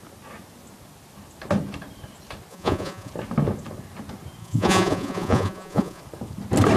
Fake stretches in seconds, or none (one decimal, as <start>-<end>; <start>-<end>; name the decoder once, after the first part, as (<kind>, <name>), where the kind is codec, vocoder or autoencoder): 2.5-3.1 (vocoder, Vocos); 4.4-6.0